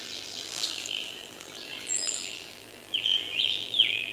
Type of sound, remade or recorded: remade